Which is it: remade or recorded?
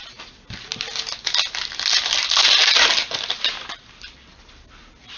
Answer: recorded